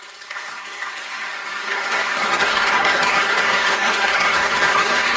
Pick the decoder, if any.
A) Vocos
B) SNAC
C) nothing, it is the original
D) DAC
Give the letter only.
B